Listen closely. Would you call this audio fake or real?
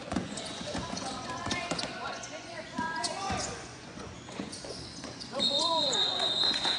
fake